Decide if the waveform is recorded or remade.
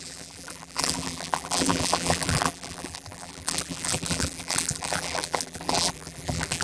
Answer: remade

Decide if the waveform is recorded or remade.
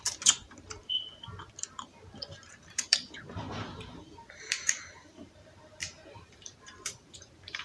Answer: remade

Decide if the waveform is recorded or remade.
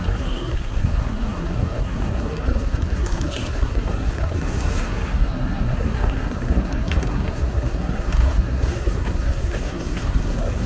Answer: remade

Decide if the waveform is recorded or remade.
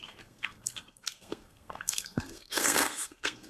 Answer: remade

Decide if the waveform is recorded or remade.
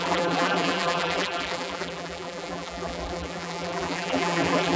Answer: remade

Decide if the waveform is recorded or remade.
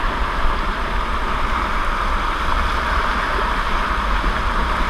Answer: remade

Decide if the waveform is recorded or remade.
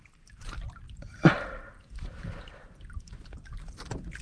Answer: remade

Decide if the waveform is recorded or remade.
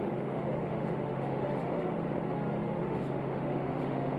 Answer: remade